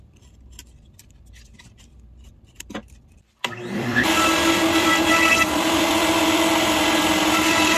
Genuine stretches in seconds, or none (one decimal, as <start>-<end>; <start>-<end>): none